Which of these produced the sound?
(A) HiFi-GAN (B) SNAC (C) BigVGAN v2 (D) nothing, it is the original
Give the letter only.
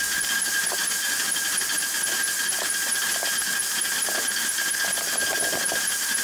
D